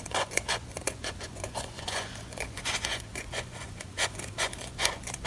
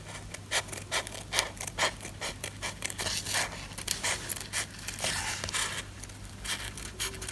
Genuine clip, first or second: second